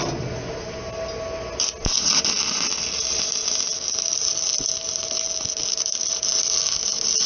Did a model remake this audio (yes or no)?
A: no